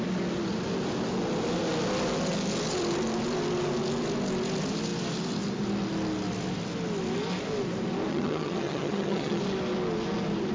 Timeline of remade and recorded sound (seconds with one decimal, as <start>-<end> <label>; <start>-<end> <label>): 0.0-8.1 recorded; 8.1-9.4 remade; 9.4-10.5 recorded